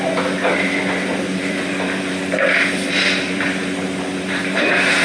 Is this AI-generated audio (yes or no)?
yes